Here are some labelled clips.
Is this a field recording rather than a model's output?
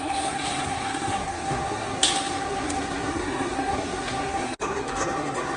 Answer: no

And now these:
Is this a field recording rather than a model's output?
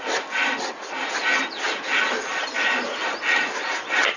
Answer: yes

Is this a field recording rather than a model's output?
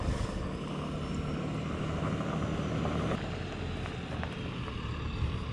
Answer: yes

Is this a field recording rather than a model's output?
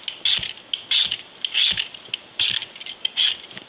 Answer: yes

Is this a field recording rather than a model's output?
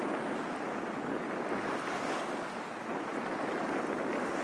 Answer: yes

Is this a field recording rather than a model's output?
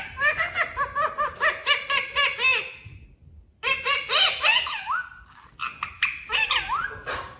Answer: yes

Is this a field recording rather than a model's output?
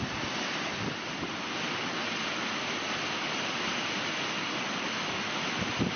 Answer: yes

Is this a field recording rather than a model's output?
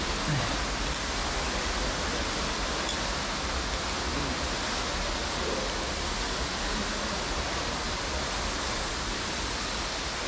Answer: yes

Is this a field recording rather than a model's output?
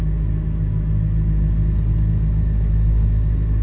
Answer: yes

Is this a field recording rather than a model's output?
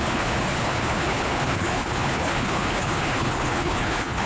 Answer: no